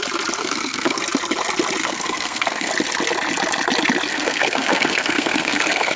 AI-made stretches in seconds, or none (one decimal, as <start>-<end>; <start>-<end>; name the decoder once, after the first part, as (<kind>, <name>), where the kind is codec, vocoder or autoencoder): 0.4-1.0 (codec, SNAC); 1.8-2.7; 4.1-6.0